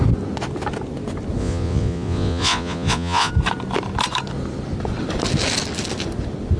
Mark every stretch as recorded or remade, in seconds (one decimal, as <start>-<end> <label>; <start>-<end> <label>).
0.0-1.4 recorded; 1.4-3.3 remade; 3.3-6.6 recorded